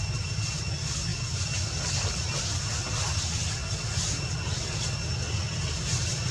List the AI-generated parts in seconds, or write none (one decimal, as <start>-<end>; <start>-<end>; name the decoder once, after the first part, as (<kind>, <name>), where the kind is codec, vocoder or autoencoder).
none